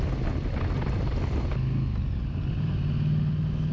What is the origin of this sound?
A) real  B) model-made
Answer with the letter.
A